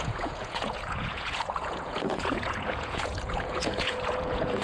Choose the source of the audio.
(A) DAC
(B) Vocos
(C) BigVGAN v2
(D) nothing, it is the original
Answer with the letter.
B